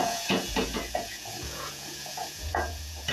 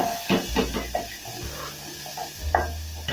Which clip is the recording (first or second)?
second